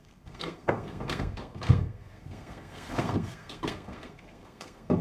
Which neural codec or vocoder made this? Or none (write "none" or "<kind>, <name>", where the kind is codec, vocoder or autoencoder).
codec, SNAC